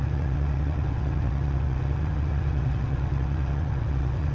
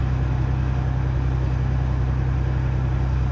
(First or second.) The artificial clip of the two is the first